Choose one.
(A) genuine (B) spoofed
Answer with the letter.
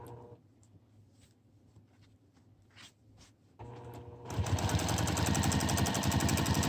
A